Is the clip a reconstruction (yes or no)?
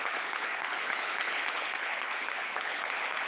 yes